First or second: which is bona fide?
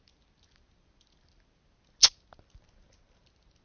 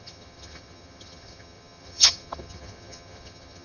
first